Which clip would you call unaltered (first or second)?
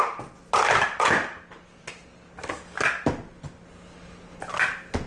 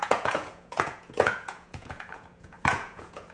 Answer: first